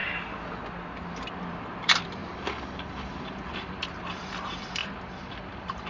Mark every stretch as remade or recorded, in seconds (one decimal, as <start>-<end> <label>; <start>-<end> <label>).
0.0-1.4 recorded; 1.4-2.2 remade; 2.2-2.9 recorded; 2.9-5.9 remade